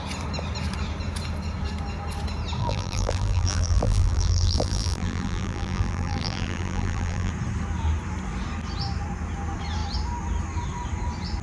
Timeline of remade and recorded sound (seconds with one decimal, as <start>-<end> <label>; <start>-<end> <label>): 0.0-2.6 recorded; 2.6-7.3 remade; 7.3-11.4 recorded